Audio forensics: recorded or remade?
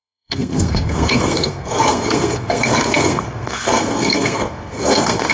remade